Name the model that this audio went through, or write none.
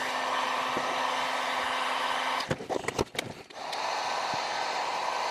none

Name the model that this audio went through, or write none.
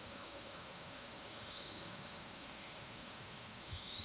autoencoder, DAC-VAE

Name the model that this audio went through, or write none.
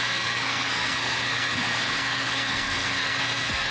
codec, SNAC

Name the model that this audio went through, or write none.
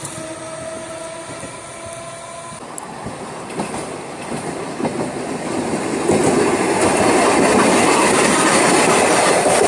none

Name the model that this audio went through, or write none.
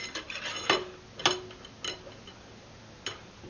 none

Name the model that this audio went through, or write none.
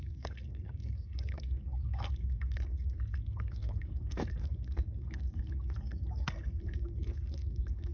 codec, SNAC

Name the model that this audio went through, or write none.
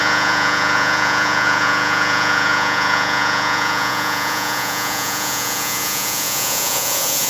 vocoder, Vocos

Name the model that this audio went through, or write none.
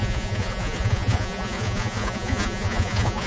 vocoder, Vocos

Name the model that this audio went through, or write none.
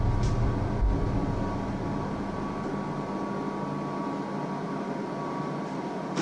none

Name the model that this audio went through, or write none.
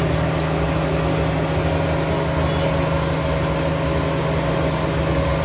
none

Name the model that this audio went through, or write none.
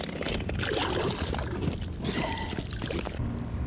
none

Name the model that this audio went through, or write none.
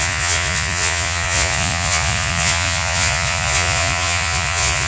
vocoder, Vocos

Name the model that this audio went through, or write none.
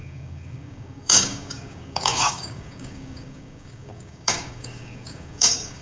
codec, DAC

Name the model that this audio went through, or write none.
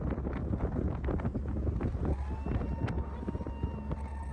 none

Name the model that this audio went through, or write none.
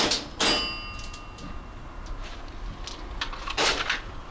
none